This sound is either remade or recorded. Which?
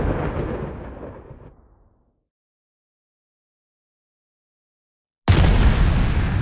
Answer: recorded